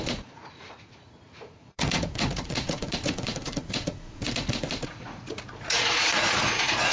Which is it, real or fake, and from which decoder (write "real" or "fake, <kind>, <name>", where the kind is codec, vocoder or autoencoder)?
fake, vocoder, Vocos